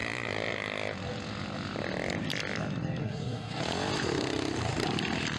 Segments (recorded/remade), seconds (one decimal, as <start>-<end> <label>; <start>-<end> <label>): 0.0-3.0 recorded; 3.0-3.6 remade; 3.6-5.4 recorded